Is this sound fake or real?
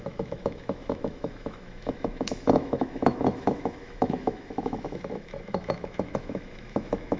fake